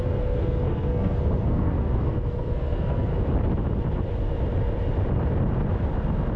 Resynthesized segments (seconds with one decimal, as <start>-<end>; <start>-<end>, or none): 0.0-3.1